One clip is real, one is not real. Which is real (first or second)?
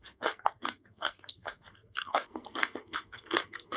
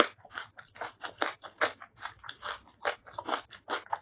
second